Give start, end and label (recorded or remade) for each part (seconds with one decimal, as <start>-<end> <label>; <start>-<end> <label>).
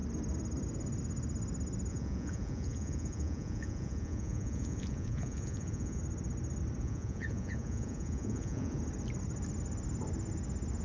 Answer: 0.0-1.9 recorded; 1.9-6.0 remade; 6.0-6.8 recorded; 6.8-8.8 remade; 8.8-10.8 recorded